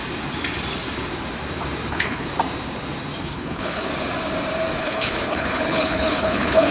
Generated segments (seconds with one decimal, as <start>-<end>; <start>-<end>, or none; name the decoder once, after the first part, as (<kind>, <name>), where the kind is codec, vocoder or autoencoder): 1.9-2.3 (codec, HILCodec); 3.2-3.9; 4.8-6.7